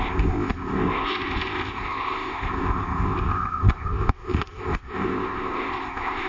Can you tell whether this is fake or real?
fake